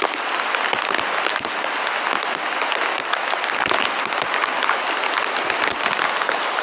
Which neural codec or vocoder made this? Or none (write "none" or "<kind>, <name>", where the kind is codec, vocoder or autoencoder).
none